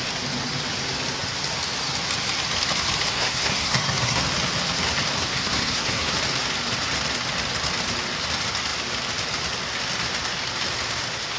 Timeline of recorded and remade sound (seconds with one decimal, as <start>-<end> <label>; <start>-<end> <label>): 0.0-3.1 recorded; 3.1-4.2 remade; 4.2-5.2 recorded; 5.2-6.1 remade; 6.1-11.4 recorded